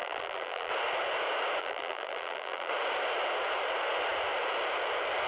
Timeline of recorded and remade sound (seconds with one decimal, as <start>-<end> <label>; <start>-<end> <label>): 0.0-0.7 remade; 0.7-1.6 recorded; 1.6-2.7 remade; 2.7-5.3 recorded